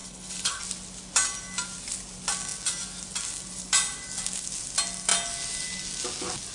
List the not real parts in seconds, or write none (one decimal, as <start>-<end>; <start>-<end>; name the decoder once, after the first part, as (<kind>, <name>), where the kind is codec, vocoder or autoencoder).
0.0-0.6 (codec, HILCodec)